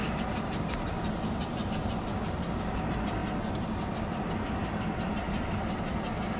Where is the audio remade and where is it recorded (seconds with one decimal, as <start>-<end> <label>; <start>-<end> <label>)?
0.0-1.7 recorded; 1.7-3.2 remade; 3.2-3.9 recorded; 3.9-6.4 remade